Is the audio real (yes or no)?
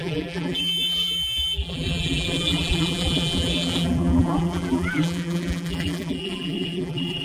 no